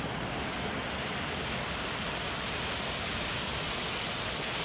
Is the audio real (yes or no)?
yes